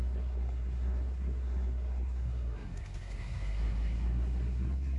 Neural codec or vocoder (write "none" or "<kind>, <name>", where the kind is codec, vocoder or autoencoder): codec, SNAC